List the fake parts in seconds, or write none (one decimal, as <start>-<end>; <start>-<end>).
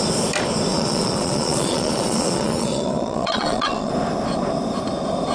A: 0.7-3.9